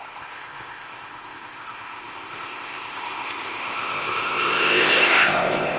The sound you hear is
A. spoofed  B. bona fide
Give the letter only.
A